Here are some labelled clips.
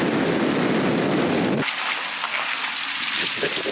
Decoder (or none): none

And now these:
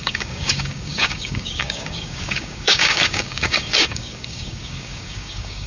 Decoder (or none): codec, DAC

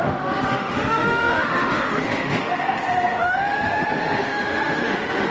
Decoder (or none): autoencoder, DAC-VAE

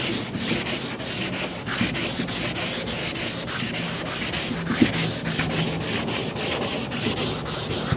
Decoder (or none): none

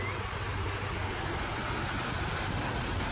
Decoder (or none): none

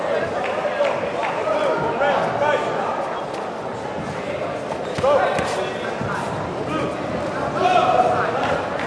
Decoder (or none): none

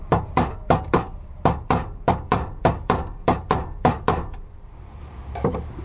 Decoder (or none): vocoder, BigVGAN v2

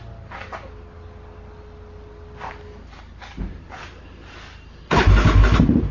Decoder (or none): none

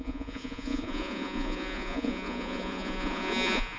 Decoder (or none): vocoder, Vocos